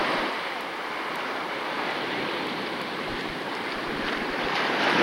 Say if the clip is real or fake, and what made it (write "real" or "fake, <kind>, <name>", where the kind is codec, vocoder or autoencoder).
fake, vocoder, BigVGAN v2